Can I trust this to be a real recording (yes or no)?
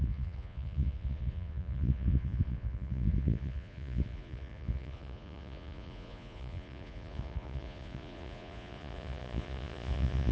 no